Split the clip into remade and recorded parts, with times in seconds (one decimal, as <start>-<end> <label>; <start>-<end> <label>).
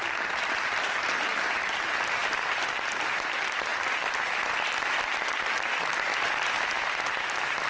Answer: 0.0-7.7 recorded